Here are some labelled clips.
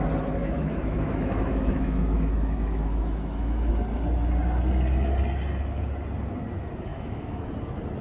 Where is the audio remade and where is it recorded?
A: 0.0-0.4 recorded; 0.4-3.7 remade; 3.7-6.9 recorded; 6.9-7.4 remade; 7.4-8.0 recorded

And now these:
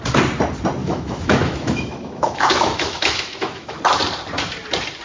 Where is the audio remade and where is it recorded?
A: 0.0-0.8 recorded; 0.8-3.8 remade; 3.8-5.0 recorded

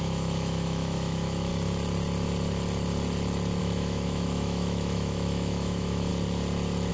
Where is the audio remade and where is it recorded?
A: 0.0-1.5 remade; 1.5-3.6 recorded; 3.6-6.1 remade; 6.1-6.9 recorded

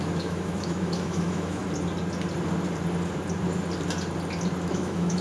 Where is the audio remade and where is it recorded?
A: 0.0-1.6 remade; 1.6-4.7 recorded; 4.7-5.2 remade